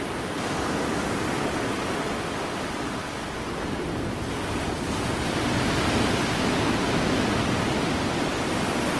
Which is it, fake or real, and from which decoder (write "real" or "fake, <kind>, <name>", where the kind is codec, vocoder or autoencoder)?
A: real